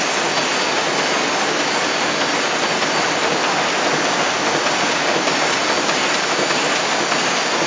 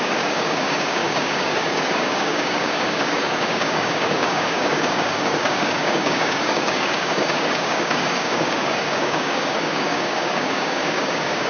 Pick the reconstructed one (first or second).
second